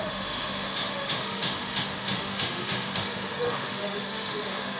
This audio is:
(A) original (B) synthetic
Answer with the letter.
B